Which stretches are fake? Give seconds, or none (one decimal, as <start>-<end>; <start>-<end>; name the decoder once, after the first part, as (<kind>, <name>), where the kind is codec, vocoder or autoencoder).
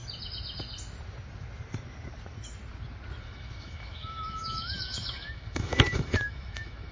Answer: 3.2-6.9 (autoencoder, DAC-VAE)